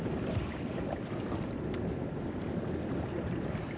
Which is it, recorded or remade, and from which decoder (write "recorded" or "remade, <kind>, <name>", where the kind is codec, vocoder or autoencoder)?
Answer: recorded